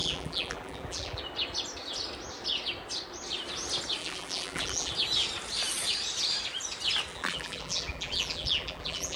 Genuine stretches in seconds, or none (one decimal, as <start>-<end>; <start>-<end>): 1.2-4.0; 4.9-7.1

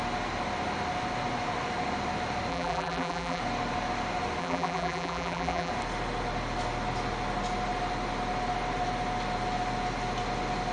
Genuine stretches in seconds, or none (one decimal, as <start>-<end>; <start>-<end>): 0.0-2.5; 3.4-4.4; 5.7-10.7

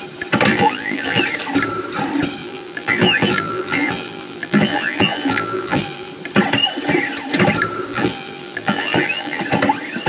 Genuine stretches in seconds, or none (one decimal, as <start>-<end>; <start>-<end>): 0.0-0.5; 1.2-2.4; 6.1-7.9; 9.4-10.1

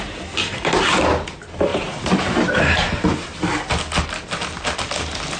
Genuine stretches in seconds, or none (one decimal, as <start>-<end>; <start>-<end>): 0.0-1.7; 2.9-5.4